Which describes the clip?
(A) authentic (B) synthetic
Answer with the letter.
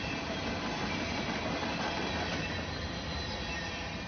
A